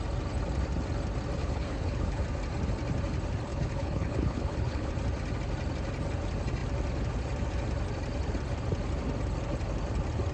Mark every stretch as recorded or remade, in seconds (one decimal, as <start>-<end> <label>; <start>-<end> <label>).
0.0-1.4 recorded; 1.4-2.2 remade; 2.2-3.5 recorded; 3.5-4.9 remade; 4.9-10.3 recorded